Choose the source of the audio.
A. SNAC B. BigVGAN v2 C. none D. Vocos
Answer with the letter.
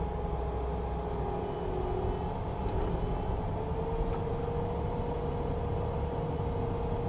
C